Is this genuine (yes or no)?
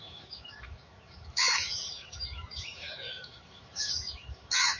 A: no